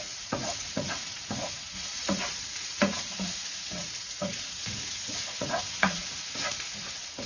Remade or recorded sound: remade